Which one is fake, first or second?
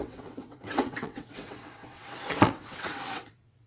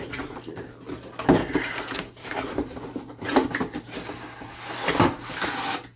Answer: first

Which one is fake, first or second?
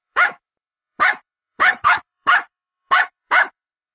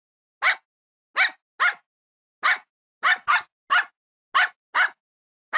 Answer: first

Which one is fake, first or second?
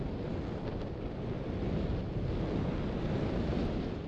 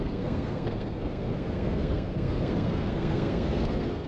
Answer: second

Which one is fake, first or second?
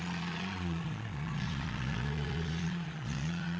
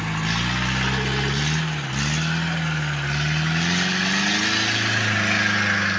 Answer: first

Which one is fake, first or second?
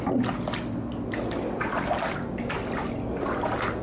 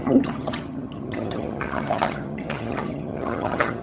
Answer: second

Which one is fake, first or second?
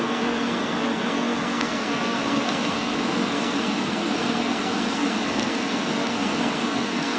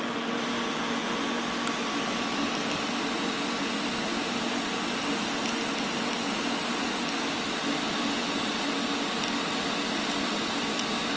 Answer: first